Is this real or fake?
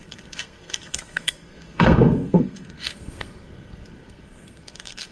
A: fake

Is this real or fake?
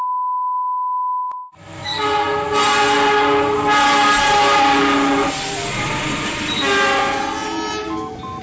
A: real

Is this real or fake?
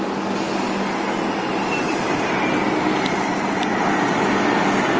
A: real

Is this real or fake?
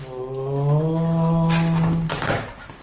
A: real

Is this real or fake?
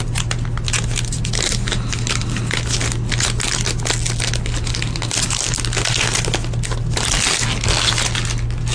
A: real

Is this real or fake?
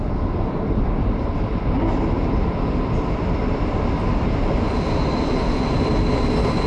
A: real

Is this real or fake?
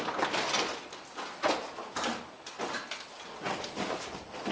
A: real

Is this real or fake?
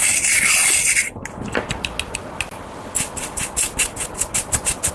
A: real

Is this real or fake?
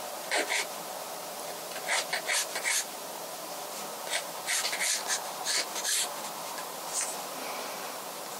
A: real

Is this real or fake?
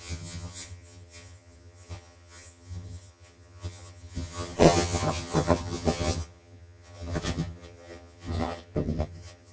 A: fake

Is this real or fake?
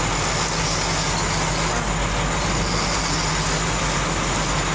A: real